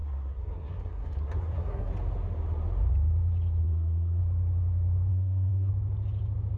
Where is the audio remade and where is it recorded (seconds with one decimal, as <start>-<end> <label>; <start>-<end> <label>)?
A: 0.0-1.9 remade; 1.9-3.6 recorded; 3.6-4.2 remade; 4.2-5.1 recorded; 5.1-5.7 remade; 5.7-6.6 recorded